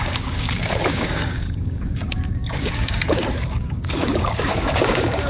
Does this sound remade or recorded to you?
remade